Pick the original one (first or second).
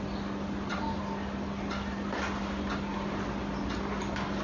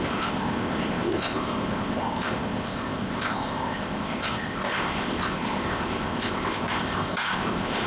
first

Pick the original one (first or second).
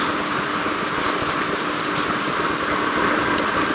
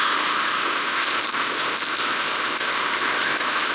first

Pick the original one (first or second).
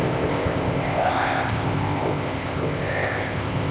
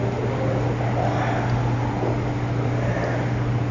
second